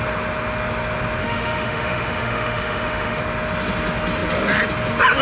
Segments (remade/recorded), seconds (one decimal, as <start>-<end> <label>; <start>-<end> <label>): 0.0-1.2 recorded; 1.2-3.2 remade; 3.2-5.2 recorded